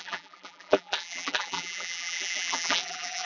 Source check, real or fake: fake